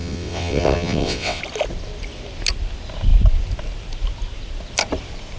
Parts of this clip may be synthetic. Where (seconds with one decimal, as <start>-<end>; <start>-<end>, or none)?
0.0-1.4